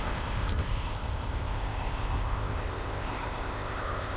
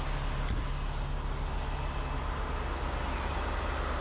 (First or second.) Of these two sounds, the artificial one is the first